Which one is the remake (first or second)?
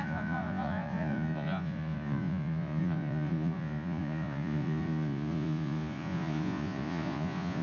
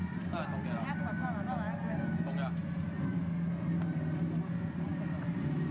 first